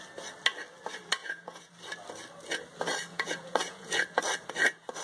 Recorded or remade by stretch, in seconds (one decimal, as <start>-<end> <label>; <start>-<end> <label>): 0.0-1.2 recorded; 1.2-1.7 remade; 1.7-3.1 recorded; 3.1-4.2 remade; 4.2-5.0 recorded